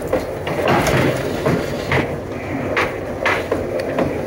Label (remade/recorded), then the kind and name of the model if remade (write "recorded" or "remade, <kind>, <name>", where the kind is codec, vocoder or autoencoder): recorded